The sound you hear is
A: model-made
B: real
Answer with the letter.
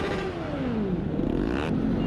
B